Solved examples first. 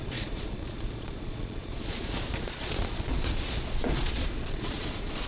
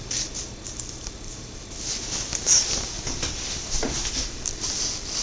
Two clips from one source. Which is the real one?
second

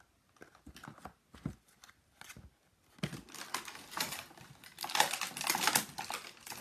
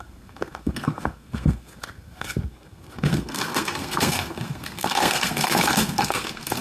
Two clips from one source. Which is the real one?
first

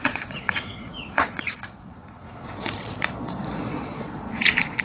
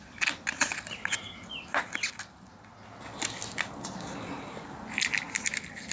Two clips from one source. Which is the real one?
second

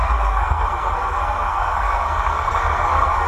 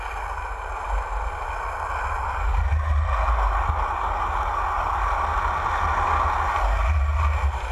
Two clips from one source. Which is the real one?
second